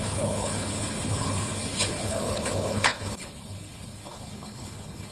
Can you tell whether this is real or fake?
fake